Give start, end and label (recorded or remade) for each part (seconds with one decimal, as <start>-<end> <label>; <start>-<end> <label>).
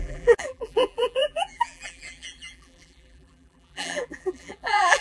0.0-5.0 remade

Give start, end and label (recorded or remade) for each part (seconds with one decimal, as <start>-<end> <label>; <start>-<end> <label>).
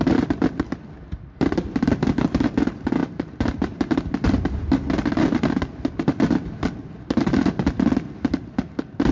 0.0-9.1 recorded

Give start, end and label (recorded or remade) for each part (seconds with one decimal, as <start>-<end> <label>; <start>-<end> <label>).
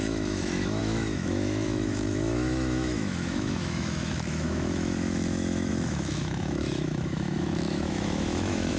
0.0-8.8 remade